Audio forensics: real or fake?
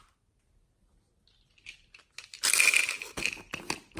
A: real